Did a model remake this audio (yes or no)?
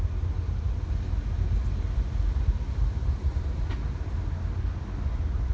no